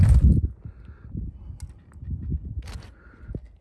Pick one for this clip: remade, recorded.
recorded